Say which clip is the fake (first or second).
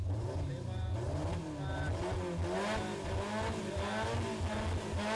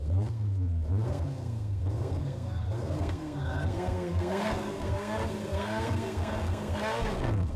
second